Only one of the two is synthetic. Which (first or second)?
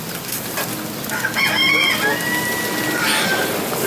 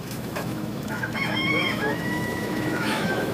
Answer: second